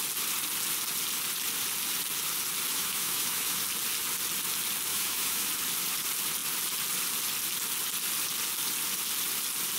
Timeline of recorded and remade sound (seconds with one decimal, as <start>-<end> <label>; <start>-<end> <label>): 0.0-2.7 recorded; 2.7-3.6 remade; 3.6-4.9 recorded; 4.9-5.5 remade; 5.5-9.8 recorded